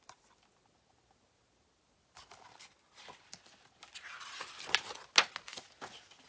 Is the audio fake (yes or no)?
no